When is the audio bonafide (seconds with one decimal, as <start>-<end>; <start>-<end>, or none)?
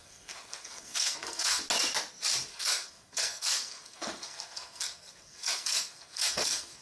1.6-2.5